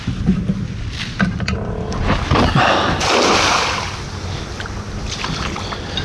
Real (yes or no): yes